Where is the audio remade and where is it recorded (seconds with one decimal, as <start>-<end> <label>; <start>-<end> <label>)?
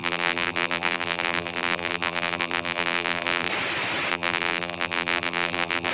0.0-3.5 remade; 3.5-4.1 recorded; 4.1-5.9 remade